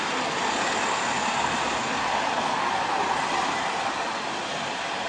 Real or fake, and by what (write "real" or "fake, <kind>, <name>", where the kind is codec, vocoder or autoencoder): real